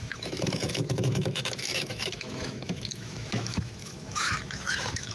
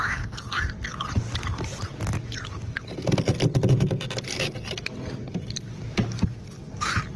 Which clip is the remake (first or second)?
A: first